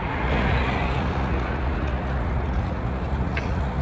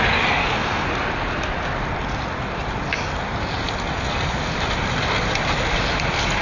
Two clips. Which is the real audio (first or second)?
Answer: second